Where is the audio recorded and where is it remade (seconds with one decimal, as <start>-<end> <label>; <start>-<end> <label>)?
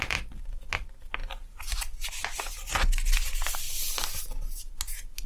0.0-5.3 recorded